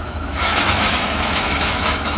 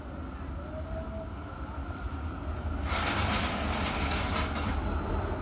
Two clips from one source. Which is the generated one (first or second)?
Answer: first